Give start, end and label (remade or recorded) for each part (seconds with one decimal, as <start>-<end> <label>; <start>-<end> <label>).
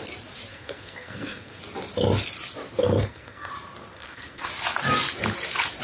0.0-0.5 recorded; 0.5-1.6 remade; 1.6-2.8 recorded; 2.8-3.5 remade; 3.5-3.9 recorded; 3.9-4.5 remade; 4.5-5.8 recorded